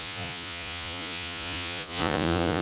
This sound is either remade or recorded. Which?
remade